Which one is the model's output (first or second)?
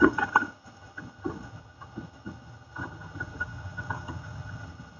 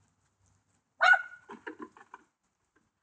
first